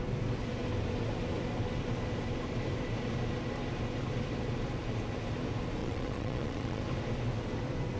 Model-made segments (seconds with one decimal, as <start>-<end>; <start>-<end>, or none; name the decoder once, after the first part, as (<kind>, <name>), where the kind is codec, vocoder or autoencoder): 5.8-6.8 (vocoder, Vocos)